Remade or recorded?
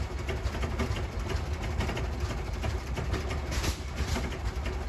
recorded